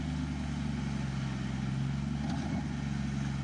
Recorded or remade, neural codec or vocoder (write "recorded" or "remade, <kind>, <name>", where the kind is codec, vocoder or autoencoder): recorded